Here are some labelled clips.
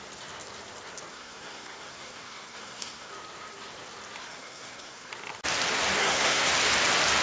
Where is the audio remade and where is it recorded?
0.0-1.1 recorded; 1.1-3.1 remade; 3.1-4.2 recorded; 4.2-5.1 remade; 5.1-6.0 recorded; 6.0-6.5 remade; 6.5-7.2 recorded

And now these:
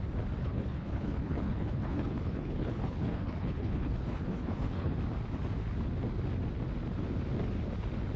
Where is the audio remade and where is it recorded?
0.0-0.4 recorded; 0.4-5.0 remade; 5.0-8.2 recorded

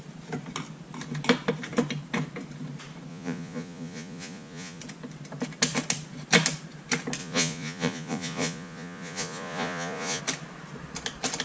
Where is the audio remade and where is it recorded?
0.0-3.1 recorded; 3.1-4.8 remade; 4.8-7.2 recorded; 7.2-10.2 remade; 10.2-11.4 recorded

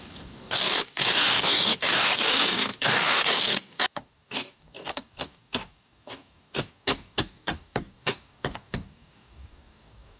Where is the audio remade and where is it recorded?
0.0-10.2 remade

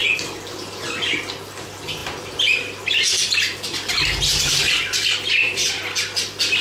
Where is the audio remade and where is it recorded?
0.0-6.6 recorded